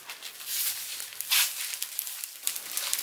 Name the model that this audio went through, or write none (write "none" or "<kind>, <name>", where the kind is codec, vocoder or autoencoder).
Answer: none